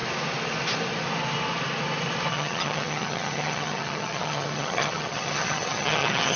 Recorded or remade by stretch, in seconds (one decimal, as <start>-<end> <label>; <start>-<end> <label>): 0.0-2.3 recorded; 2.3-6.4 remade